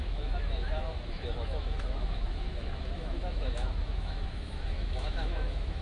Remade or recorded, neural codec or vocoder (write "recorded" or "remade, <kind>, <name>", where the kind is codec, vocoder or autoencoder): remade, autoencoder, DAC-VAE